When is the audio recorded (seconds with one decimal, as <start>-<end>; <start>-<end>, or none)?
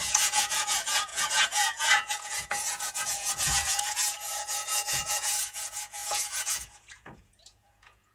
none